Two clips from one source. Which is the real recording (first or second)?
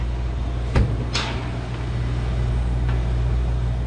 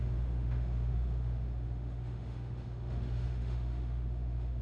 first